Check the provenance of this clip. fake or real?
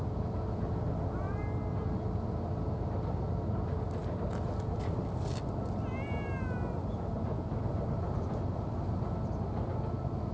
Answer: real